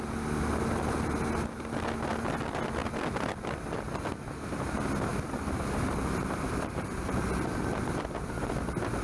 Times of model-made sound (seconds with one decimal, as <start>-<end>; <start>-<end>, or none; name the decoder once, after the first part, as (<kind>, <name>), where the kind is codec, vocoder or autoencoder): 2.8-4.0 (vocoder, BigVGAN v2); 5.1-8.3